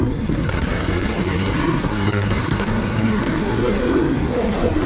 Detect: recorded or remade remade